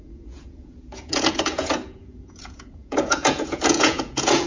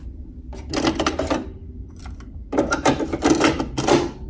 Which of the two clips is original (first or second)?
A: second